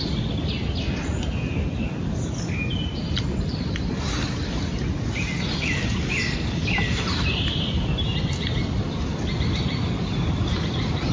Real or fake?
real